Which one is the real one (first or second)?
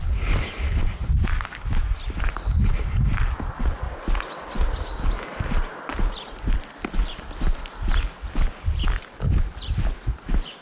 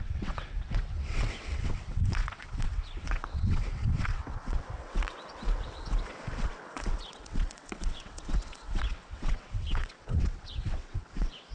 first